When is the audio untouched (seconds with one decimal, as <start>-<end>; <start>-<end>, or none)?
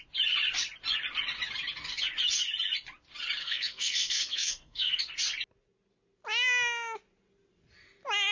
0.0-3.4; 5.0-8.3